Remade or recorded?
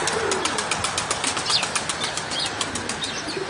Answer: recorded